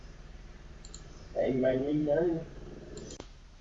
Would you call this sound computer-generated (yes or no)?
yes